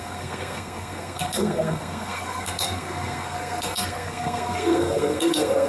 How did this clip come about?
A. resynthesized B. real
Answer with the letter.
A